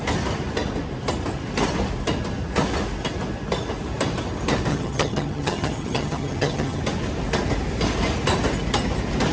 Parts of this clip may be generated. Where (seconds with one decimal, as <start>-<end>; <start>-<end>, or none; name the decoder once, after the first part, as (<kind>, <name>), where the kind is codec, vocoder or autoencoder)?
4.7-6.8 (vocoder, HiFi-GAN)